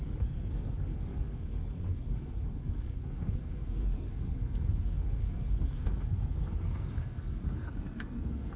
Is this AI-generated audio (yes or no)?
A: yes